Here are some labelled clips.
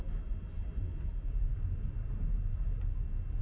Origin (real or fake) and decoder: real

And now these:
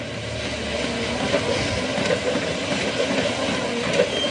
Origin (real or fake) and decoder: real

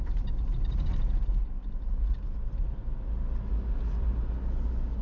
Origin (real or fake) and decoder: real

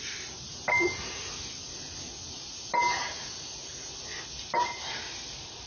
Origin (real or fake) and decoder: real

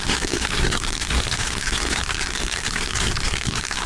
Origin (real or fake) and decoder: fake, codec, SNAC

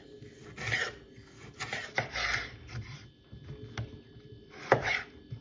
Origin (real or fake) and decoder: real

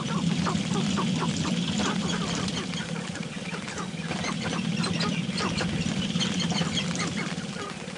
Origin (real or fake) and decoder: real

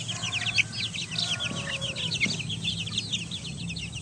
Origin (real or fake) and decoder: real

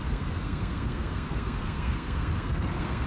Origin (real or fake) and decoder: fake, codec, SNAC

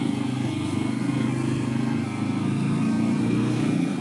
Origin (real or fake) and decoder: fake, codec, SNAC